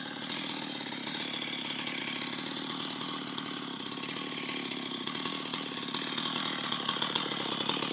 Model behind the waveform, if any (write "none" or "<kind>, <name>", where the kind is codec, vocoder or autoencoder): none